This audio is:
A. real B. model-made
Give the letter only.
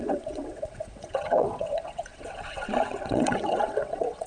B